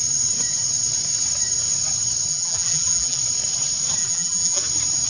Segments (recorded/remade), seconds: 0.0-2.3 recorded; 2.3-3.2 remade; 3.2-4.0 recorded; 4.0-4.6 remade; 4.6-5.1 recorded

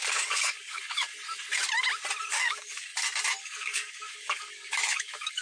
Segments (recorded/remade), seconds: 0.0-1.1 remade; 1.1-2.3 recorded; 2.3-2.9 remade; 2.9-3.4 recorded; 3.4-5.4 remade

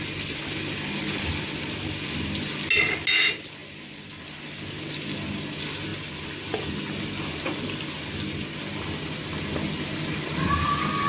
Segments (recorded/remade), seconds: 0.0-11.1 recorded

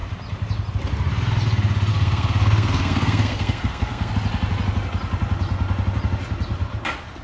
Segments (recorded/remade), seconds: 0.0-1.9 recorded; 1.9-4.1 remade; 4.1-7.2 recorded